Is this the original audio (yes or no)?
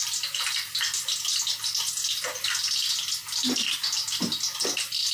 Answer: yes